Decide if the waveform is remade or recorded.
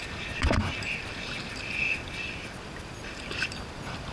recorded